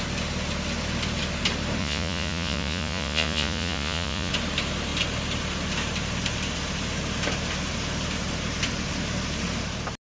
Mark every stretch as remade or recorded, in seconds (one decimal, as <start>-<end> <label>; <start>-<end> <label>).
0.0-1.8 recorded; 1.8-4.3 remade; 4.3-10.1 recorded